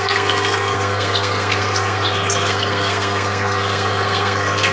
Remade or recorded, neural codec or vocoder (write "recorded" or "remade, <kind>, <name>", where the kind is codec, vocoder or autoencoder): remade, codec, SNAC